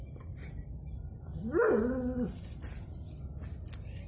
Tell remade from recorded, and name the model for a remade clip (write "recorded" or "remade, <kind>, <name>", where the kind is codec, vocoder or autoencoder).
recorded